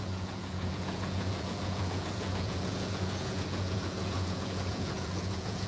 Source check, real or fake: fake